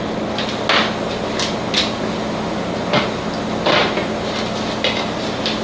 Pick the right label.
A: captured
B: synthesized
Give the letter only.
A